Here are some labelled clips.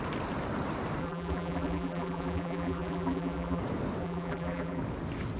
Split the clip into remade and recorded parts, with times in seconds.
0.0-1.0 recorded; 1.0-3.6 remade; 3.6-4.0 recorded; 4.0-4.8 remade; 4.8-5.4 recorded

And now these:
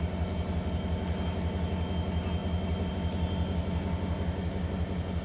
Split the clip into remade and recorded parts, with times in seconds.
0.0-5.2 recorded

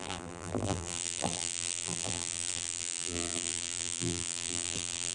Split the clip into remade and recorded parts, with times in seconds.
0.0-5.1 remade